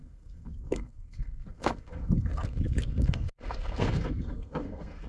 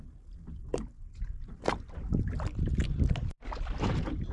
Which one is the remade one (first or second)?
first